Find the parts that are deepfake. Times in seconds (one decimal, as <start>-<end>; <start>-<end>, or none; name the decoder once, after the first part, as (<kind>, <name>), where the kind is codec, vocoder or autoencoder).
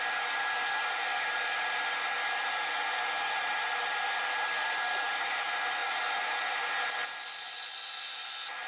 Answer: none